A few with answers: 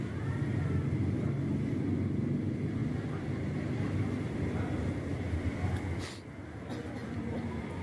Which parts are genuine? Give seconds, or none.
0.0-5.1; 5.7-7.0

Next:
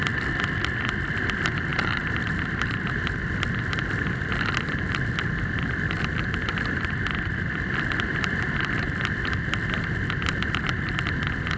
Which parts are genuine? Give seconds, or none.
0.0-1.7; 6.0-11.6

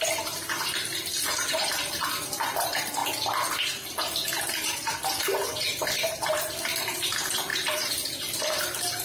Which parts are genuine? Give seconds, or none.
3.0-4.3; 4.8-5.5

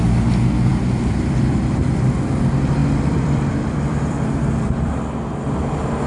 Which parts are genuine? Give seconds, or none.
0.0-0.7; 2.3-2.8; 4.5-6.1

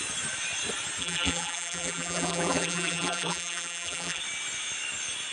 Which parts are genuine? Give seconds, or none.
0.0-1.0; 4.2-5.3

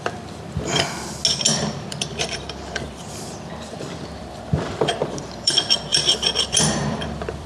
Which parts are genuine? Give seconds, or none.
0.0-1.5; 5.5-5.9

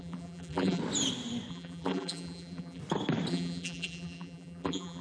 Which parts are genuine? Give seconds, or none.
0.8-1.5; 2.8-3.3

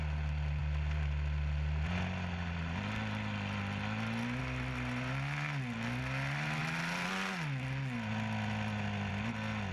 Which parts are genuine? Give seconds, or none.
0.0-9.7